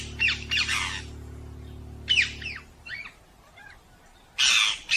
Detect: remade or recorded recorded